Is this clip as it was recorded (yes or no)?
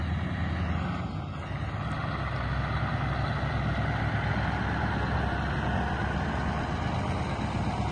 yes